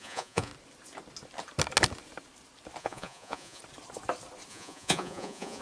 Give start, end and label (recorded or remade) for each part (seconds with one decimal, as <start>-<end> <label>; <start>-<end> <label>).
0.0-0.5 remade; 0.5-2.8 recorded; 2.8-3.6 remade; 3.6-4.5 recorded; 4.5-5.6 remade